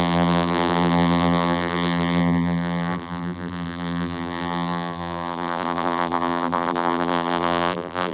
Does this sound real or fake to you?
fake